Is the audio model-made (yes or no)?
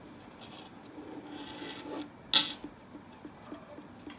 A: no